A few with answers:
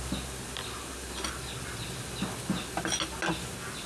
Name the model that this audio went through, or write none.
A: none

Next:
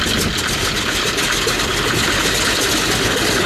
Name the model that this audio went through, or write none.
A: none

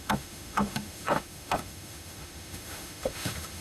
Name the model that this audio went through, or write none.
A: autoencoder, DAC-VAE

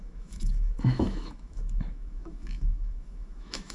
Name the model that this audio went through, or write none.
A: autoencoder, DAC-VAE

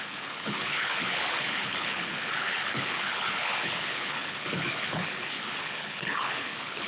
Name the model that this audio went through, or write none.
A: codec, HILCodec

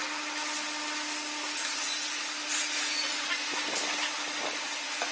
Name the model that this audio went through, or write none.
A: none